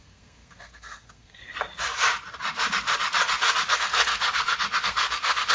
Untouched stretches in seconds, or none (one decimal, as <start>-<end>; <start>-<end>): 1.4-3.7